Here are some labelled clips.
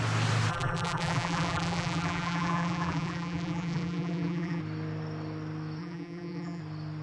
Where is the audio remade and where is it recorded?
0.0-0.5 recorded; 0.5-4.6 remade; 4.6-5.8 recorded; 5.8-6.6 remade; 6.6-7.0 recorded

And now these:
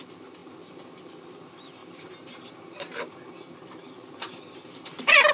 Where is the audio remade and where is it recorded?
0.0-1.8 recorded; 1.8-5.3 remade

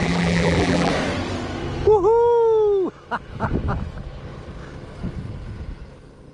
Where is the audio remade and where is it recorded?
0.0-0.9 remade; 0.9-6.3 recorded

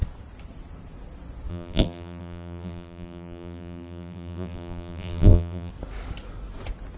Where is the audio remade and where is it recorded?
0.0-1.5 recorded; 1.5-5.7 remade; 5.7-7.0 recorded